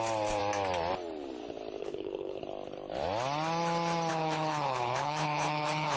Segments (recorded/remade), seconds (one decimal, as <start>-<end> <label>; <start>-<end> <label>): 0.0-1.8 recorded; 1.8-2.4 remade; 2.4-4.1 recorded; 4.1-6.0 remade